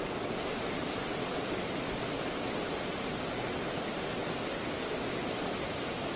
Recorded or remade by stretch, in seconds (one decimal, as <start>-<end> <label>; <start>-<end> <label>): 0.0-6.2 recorded